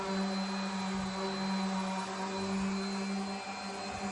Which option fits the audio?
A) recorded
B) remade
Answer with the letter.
A